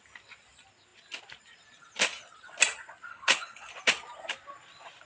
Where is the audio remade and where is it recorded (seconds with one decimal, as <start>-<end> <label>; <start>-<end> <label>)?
0.0-3.1 recorded; 3.1-3.7 remade; 3.7-5.1 recorded